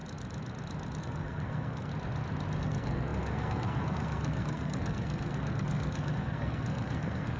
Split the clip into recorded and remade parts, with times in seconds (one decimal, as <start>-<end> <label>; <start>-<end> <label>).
0.0-1.0 recorded; 1.0-1.9 remade; 1.9-2.6 recorded; 2.6-7.4 remade